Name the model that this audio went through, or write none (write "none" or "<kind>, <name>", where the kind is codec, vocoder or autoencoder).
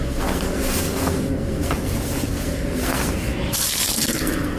codec, SNAC